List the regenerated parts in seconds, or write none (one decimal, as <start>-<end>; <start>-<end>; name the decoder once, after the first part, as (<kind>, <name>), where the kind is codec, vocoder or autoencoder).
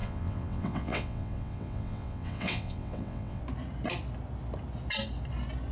0.0-3.4 (vocoder, WaveNeXt)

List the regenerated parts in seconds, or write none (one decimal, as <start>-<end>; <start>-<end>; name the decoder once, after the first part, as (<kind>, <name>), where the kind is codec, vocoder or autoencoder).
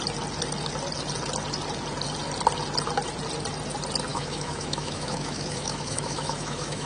4.1-6.9 (autoencoder, DAC-VAE)